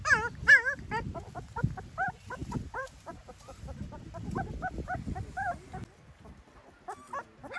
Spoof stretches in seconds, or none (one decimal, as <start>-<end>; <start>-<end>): 2.4-4.4